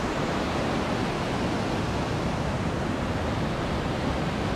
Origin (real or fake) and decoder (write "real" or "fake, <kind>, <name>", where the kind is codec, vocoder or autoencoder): real